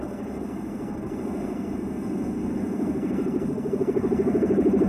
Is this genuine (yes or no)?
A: no